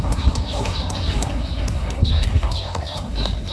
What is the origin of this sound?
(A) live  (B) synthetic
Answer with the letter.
B